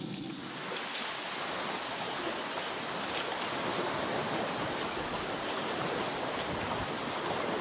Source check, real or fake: real